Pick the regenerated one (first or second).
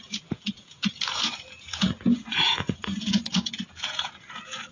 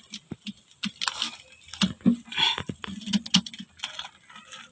first